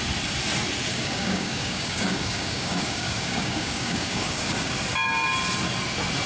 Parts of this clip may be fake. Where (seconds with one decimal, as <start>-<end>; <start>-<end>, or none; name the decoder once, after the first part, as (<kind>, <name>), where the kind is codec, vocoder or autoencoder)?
0.9-4.7 (codec, DAC)